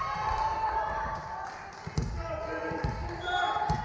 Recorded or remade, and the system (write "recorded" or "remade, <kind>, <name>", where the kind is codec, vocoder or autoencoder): recorded